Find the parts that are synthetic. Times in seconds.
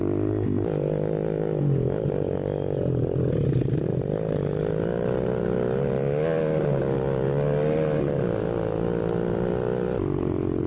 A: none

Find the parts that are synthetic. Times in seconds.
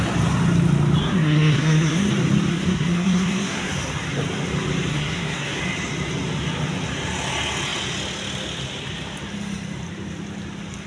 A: 1.0-2.1 (codec, SNAC); 2.5-3.7; 4.9-5.6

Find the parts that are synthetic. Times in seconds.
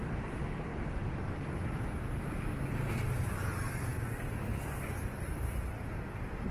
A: none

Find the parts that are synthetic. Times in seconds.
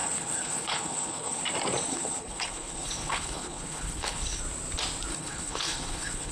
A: 0.0-1.4 (codec, HILCodec); 1.9-4.4; 5.1-6.3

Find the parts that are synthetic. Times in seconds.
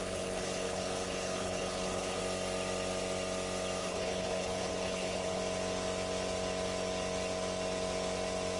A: 0.0-2.2 (codec, HILCodec); 3.8-5.4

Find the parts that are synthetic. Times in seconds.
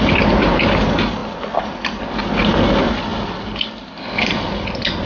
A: none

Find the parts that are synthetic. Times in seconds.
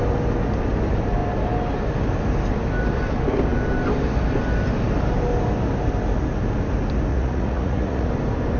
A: 7.1-8.1 (vocoder, Vocos)